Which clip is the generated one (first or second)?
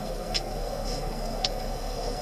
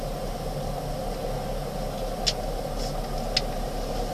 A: first